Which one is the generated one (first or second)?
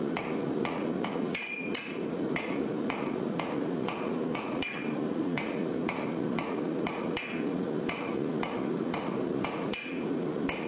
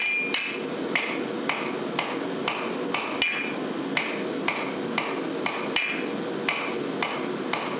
first